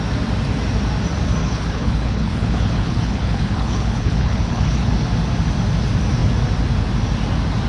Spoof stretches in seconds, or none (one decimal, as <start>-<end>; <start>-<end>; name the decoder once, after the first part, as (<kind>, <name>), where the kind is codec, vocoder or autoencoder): 1.4-4.9 (codec, HILCodec)